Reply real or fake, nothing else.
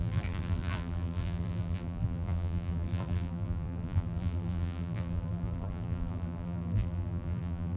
fake